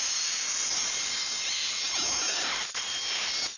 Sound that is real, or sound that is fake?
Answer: real